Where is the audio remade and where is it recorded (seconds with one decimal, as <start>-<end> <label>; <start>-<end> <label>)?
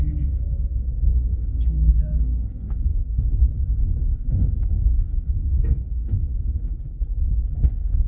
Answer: 0.0-2.9 remade; 2.9-3.8 recorded; 3.8-6.7 remade; 6.7-7.6 recorded; 7.6-8.1 remade